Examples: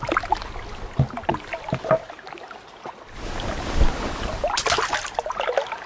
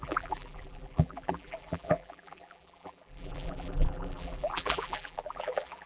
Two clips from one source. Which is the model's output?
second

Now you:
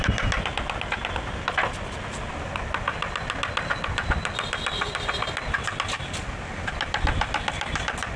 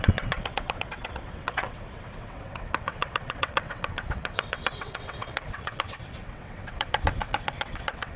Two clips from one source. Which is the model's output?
second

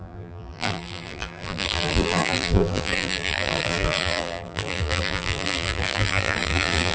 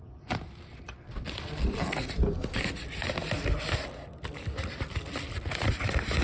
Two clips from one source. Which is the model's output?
first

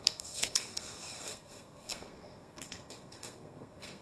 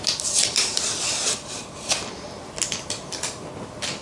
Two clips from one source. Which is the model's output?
first